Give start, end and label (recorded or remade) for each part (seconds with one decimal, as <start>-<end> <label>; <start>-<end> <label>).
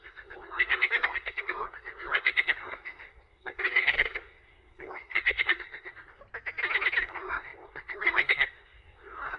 0.0-6.2 remade; 6.2-7.0 recorded; 7.0-9.4 remade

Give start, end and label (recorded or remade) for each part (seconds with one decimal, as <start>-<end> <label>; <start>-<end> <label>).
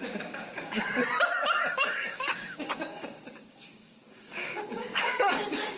0.0-1.0 remade; 1.0-1.6 recorded; 1.6-5.8 remade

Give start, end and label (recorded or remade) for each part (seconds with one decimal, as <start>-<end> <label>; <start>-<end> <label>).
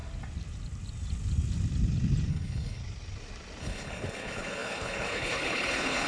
0.0-2.3 recorded; 2.3-2.8 remade; 2.8-3.6 recorded; 3.6-6.1 remade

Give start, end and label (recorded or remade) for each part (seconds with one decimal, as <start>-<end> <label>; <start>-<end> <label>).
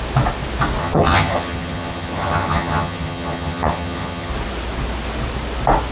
0.0-0.8 recorded; 0.8-4.3 remade; 4.3-5.9 recorded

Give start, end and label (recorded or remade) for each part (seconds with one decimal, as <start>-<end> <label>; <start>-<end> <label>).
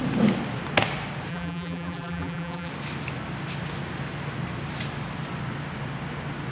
0.0-1.3 recorded; 1.3-2.7 remade; 2.7-6.5 recorded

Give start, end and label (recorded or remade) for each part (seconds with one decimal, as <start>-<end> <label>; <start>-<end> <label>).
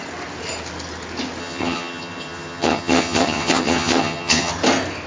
0.0-1.4 recorded; 1.4-4.5 remade; 4.5-5.1 recorded